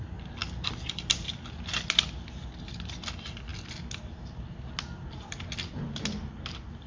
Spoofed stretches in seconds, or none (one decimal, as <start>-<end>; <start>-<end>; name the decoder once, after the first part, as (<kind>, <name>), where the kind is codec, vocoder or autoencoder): none